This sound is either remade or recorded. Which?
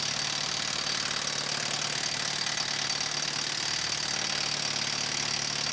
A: recorded